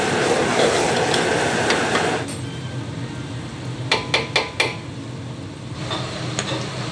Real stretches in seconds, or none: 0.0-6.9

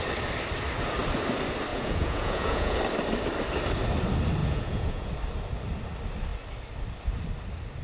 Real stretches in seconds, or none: 0.0-1.7; 2.8-4.4; 5.1-7.8

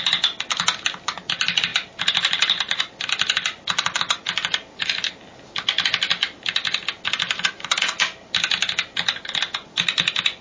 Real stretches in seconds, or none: 0.0-10.4

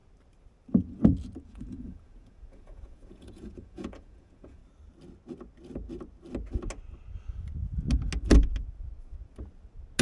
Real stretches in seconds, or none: 0.0-1.5; 4.6-10.0

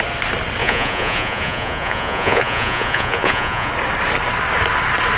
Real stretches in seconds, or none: 0.0-0.6; 3.7-5.2

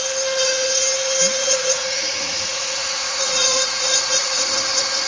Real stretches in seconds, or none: 0.0-1.4; 4.5-5.1

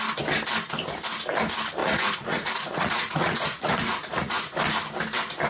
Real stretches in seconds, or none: 0.0-1.8; 4.6-5.5

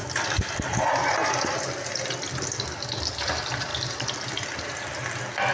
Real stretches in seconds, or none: 0.0-5.5